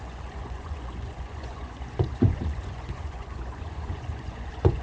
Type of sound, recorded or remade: remade